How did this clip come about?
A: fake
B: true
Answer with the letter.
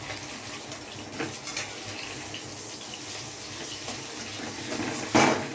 B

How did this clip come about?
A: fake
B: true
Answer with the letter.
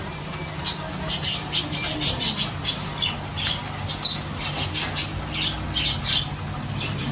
B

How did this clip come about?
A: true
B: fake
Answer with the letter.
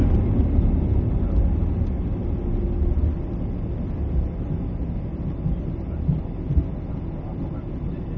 A